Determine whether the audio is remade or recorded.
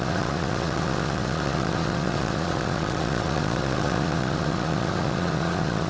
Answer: remade